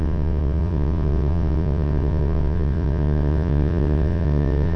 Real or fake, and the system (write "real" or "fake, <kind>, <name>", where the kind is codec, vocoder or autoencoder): fake, vocoder, WaveNeXt